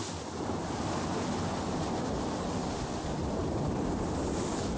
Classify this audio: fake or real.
real